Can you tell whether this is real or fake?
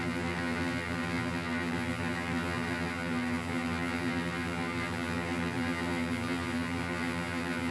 fake